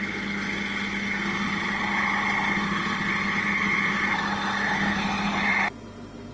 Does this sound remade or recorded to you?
recorded